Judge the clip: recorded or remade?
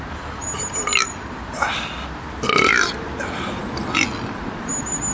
recorded